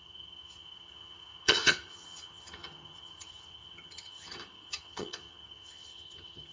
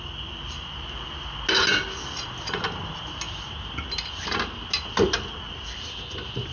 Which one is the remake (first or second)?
first